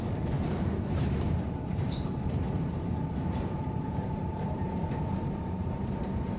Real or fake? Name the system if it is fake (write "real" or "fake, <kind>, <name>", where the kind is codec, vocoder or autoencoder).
fake, vocoder, BigVGAN v2